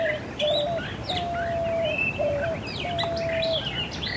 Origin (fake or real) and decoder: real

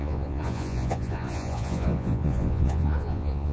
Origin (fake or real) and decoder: fake, vocoder, Vocos